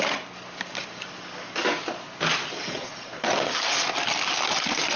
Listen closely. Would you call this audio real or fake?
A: real